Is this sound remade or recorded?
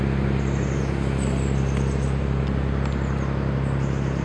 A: recorded